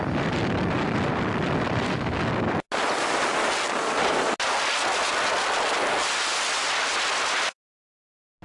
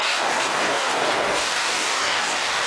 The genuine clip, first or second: first